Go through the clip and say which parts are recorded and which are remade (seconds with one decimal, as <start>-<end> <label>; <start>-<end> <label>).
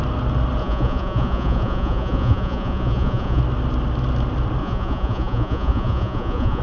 0.0-0.6 recorded; 0.6-3.4 remade; 3.4-4.6 recorded; 4.6-6.6 remade